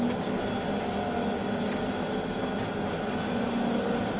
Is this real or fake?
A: real